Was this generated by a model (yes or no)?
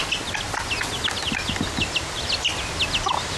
no